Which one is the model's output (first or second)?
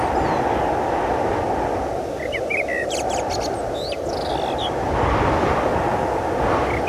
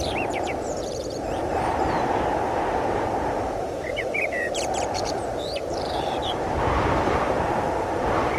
second